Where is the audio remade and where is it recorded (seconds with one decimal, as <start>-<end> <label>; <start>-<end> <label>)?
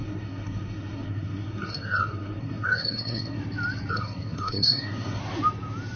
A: 0.0-3.4 remade; 3.4-3.9 recorded; 3.9-5.2 remade; 5.2-6.0 recorded